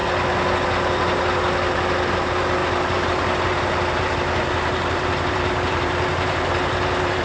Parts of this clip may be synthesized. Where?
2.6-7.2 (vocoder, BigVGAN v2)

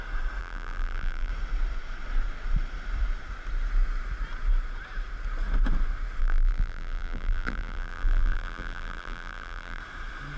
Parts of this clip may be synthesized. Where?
0.4-1.3 (vocoder, BigVGAN v2); 6.2-9.8

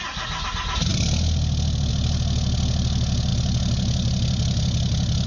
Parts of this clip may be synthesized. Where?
none

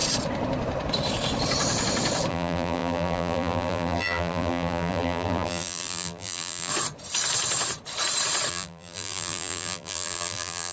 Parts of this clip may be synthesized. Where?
2.3-6.7 (vocoder, BigVGAN v2); 8.5-10.7

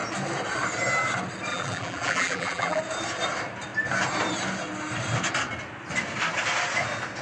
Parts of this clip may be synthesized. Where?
1.5-2.8 (vocoder, BigVGAN v2)

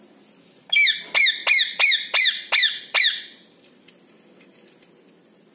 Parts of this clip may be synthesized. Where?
1.4-3.9 (vocoder, BigVGAN v2)